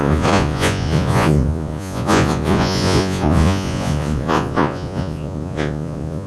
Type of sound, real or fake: fake